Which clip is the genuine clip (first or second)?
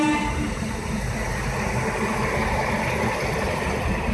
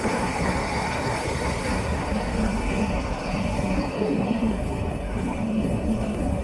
first